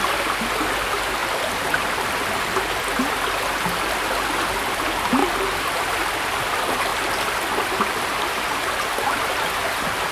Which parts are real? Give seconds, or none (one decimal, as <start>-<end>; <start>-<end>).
0.0-10.1